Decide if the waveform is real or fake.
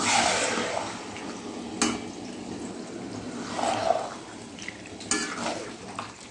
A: real